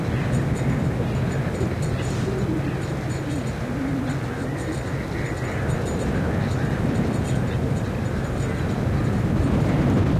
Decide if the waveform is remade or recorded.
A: recorded